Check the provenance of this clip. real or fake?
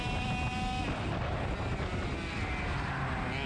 real